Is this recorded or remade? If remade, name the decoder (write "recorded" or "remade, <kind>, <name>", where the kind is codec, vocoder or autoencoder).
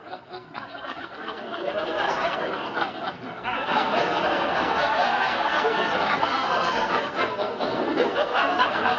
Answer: remade, codec, SNAC